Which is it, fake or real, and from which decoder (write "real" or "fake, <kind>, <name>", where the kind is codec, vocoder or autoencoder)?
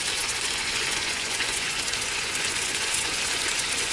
fake, vocoder, Vocos